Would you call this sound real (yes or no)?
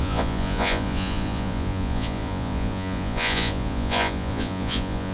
no